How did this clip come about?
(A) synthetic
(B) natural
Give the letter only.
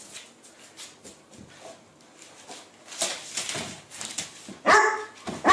B